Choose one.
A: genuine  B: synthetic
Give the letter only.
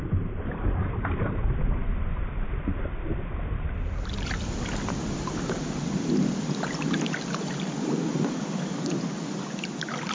B